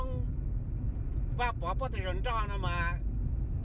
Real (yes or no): yes